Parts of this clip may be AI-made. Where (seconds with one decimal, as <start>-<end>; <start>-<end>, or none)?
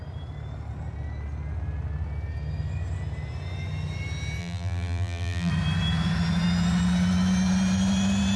4.4-5.5